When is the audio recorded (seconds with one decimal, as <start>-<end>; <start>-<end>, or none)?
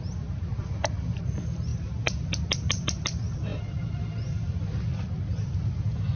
0.0-6.2